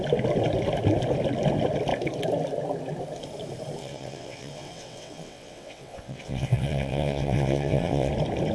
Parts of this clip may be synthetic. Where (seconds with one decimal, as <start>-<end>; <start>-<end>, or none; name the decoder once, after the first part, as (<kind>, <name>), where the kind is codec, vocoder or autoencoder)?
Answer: 3.8-8.1 (vocoder, WaveNeXt)